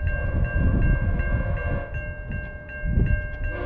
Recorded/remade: recorded